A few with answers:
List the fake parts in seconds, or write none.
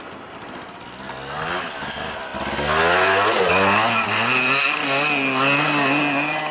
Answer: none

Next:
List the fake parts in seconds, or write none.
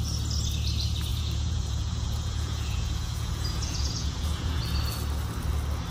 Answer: 1.1-4.6 (vocoder, Vocos)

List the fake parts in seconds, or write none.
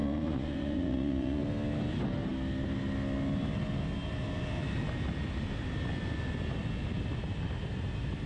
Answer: 0.0-1.4 (vocoder, Vocos)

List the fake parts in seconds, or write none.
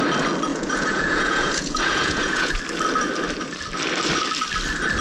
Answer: 0.5-2.6 (vocoder, Vocos)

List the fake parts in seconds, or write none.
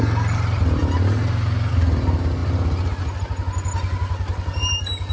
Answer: none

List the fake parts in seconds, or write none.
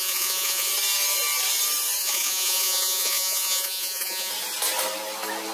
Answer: 0.0-0.7 (vocoder, Vocos); 2.0-4.3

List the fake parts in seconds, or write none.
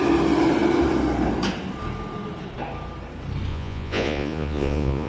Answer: 3.5-5.1 (vocoder, Vocos)